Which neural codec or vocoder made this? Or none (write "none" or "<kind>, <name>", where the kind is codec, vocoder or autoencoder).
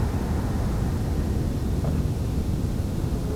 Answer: none